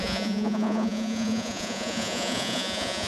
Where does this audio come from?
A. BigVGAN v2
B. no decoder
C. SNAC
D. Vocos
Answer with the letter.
D